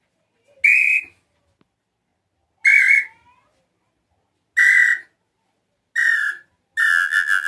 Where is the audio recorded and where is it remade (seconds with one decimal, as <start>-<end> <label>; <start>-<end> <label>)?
0.0-6.9 recorded; 6.9-7.5 remade

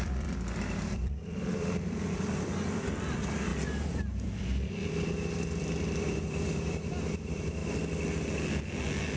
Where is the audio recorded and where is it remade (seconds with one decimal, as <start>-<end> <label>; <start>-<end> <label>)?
0.0-7.6 remade; 7.6-9.2 recorded

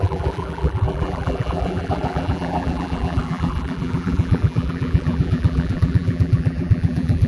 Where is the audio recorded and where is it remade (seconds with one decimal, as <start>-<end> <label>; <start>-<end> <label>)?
0.0-7.3 remade

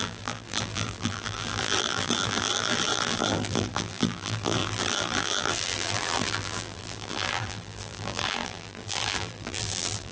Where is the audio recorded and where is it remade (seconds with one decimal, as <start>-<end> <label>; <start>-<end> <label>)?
0.0-10.1 remade

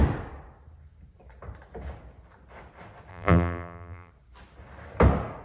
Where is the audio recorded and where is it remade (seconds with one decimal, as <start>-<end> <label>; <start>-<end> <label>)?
0.0-3.1 recorded; 3.1-4.1 remade; 4.1-5.4 recorded

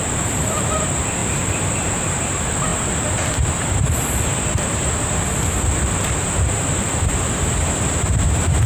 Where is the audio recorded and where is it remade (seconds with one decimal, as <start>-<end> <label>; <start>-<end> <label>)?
0.0-8.7 remade

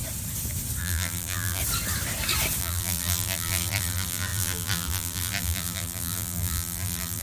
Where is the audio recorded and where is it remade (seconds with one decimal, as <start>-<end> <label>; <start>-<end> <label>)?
0.0-0.8 recorded; 0.8-1.6 remade; 1.6-2.6 recorded; 2.6-7.2 remade